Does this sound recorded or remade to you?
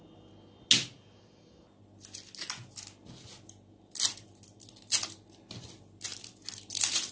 recorded